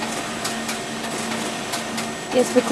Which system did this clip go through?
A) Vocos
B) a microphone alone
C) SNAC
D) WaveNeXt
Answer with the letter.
B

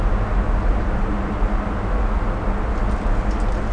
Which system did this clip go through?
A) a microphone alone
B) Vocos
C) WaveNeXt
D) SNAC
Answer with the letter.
A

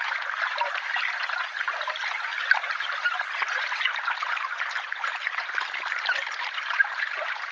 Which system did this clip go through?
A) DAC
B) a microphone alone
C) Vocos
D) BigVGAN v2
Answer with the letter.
B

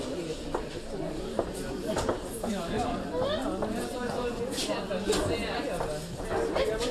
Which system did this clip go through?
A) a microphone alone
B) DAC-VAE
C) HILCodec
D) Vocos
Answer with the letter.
A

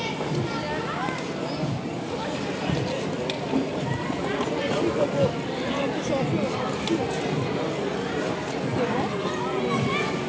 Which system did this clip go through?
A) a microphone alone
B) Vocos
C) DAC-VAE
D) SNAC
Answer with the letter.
A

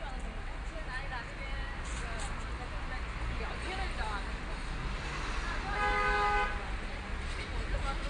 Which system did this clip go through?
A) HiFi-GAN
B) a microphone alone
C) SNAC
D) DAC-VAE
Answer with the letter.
B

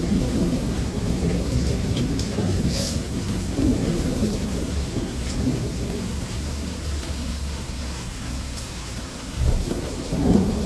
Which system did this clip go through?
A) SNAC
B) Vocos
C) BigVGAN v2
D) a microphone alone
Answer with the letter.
A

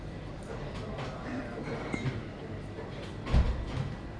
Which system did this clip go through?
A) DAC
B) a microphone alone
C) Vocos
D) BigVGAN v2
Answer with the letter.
D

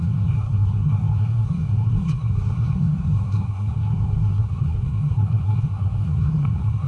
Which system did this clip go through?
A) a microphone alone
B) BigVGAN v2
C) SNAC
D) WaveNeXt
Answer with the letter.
C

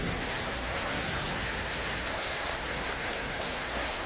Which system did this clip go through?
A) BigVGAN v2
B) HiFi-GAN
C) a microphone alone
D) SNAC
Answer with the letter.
D